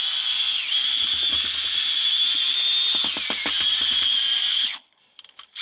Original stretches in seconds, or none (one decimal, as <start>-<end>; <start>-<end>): 0.0-4.5; 5.0-5.6